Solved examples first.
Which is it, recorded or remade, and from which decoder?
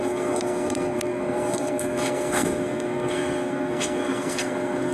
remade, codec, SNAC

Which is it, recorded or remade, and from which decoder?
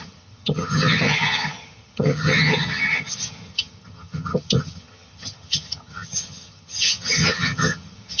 remade, vocoder, HiFi-GAN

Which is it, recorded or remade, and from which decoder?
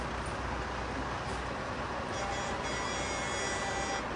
recorded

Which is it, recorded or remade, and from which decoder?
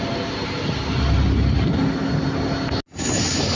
recorded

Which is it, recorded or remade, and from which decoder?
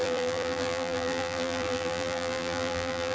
remade, vocoder, BigVGAN v2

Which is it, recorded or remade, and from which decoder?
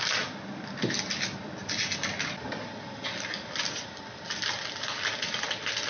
recorded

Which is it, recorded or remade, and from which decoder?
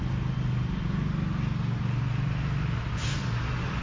recorded